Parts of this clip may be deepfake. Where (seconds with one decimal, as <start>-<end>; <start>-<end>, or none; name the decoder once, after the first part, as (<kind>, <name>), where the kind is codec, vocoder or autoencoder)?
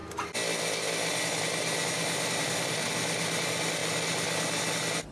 none